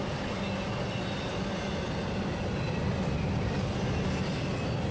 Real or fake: real